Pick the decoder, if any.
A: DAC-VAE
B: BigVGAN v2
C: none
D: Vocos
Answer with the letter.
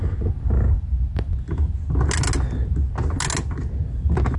C